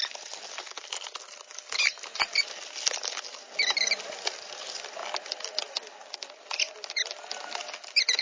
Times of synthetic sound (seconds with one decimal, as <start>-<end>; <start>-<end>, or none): none